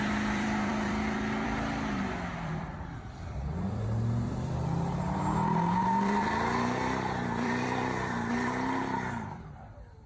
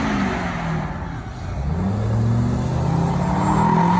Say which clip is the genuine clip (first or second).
second